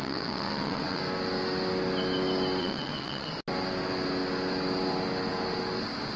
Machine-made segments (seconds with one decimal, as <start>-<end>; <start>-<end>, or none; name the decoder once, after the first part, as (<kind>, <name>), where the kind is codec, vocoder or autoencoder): 0.0-1.0 (vocoder, WaveNeXt); 2.6-3.3